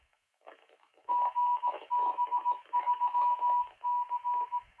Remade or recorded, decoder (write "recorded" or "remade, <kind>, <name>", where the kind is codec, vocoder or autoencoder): remade, autoencoder, DAC-VAE